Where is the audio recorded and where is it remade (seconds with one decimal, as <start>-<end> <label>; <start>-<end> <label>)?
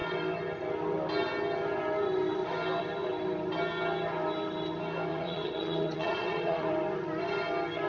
0.0-5.1 recorded; 5.1-6.7 remade; 6.7-7.9 recorded